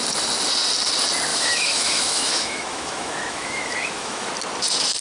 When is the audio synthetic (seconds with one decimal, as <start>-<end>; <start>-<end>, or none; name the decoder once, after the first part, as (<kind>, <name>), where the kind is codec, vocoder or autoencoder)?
1.3-4.3 (autoencoder, DAC-VAE)